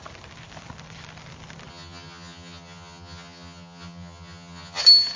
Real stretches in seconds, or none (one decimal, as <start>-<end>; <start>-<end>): 0.0-1.7; 4.8-5.2